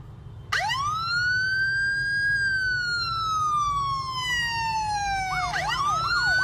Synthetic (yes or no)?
no